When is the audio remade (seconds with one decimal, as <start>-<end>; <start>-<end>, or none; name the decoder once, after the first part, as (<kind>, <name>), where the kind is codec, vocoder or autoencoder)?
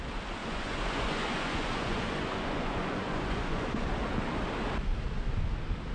0.4-3.9 (vocoder, Vocos)